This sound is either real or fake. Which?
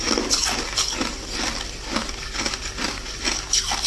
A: real